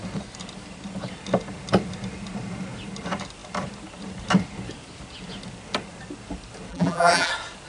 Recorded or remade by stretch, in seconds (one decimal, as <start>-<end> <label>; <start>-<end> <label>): 0.0-6.7 recorded; 6.7-7.3 remade; 7.3-7.7 recorded